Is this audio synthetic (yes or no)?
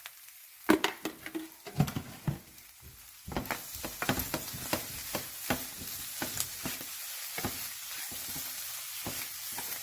no